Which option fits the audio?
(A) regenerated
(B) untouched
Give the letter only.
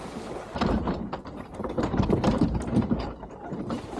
A